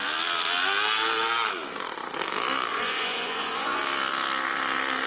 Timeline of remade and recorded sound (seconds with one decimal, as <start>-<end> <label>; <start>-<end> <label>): 0.0-2.7 recorded; 2.7-3.8 remade; 3.8-5.1 recorded